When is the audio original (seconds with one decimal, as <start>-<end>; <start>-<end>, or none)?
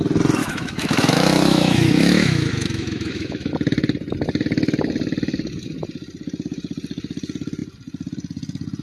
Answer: 0.0-0.4; 3.5-8.8